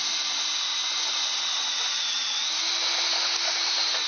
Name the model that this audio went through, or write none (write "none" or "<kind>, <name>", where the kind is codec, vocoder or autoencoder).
none